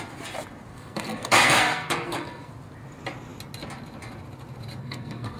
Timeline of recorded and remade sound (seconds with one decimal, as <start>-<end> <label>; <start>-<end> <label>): 0.0-0.7 recorded; 0.7-2.5 remade; 2.5-4.8 recorded; 4.8-5.4 remade